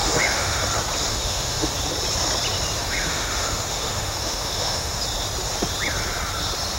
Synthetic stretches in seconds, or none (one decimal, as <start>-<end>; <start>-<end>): 0.0-0.6; 1.1-1.7; 2.8-5.0